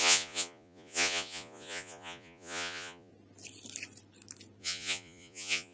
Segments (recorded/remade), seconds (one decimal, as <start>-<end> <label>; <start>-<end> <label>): 0.0-3.1 remade; 3.1-4.6 recorded; 4.6-5.7 remade